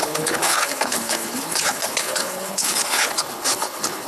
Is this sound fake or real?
fake